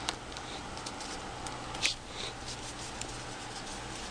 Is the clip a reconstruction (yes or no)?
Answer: no